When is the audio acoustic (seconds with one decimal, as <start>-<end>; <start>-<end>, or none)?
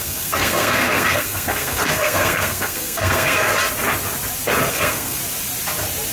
3.5-4.7; 5.2-6.1